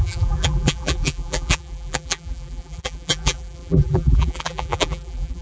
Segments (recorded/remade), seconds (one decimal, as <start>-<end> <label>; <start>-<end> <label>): 0.0-5.4 remade